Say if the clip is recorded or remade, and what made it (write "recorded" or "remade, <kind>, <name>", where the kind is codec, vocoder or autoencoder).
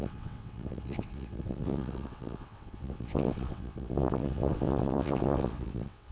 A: remade, vocoder, WaveNeXt